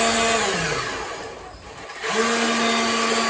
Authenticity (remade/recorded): recorded